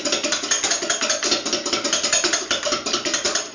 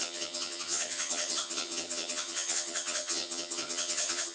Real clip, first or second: first